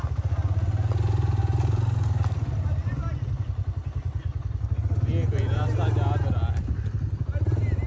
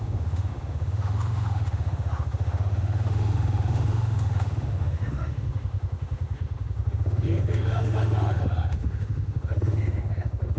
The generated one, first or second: second